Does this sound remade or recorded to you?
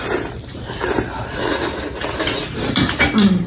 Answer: remade